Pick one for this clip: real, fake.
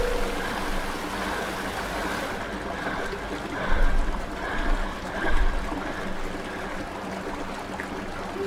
real